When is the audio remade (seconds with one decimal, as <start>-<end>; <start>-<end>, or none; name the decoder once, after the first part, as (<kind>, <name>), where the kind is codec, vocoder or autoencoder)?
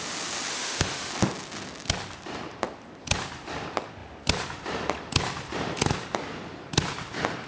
0.5-1.1 (autoencoder, DAC-VAE)